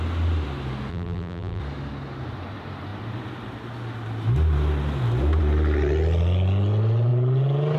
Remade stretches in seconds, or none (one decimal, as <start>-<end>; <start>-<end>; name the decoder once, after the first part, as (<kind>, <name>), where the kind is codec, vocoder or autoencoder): 0.9-1.6 (vocoder, BigVGAN v2)